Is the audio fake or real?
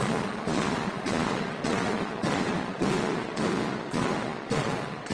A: fake